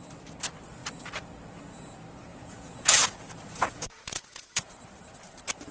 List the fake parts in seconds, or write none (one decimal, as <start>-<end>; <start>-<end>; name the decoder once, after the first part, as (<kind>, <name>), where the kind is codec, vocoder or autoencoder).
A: 2.3-4.8 (vocoder, Vocos)